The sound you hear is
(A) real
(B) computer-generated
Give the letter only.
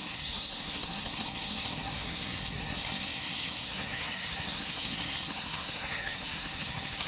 B